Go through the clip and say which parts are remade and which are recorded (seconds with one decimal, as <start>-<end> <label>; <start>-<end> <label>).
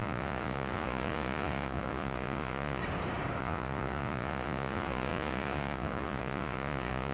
0.0-2.8 remade; 2.8-3.4 recorded; 3.4-7.1 remade